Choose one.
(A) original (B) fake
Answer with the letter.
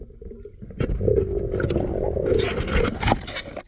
A